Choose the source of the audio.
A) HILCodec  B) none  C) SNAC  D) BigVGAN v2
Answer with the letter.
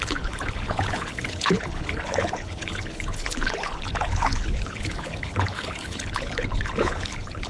A